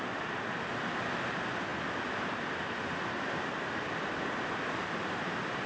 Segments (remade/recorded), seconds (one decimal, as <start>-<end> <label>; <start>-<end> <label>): 0.0-5.7 recorded